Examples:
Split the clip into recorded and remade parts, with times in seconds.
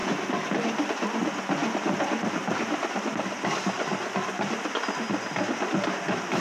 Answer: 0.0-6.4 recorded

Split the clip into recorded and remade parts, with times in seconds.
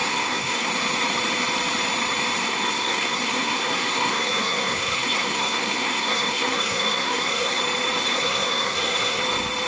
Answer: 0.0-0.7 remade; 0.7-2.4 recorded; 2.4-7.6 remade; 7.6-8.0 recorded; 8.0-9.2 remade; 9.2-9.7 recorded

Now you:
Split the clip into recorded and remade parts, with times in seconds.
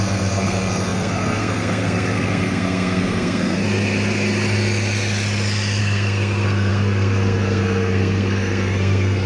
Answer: 0.0-3.6 remade; 3.6-5.8 recorded; 5.8-9.3 remade